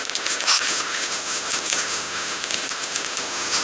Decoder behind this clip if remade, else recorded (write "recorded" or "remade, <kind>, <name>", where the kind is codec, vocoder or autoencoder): remade, autoencoder, DAC-VAE